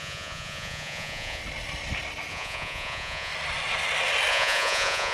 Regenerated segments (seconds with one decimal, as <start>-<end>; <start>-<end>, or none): 0.0-1.4; 2.3-3.3; 4.3-5.1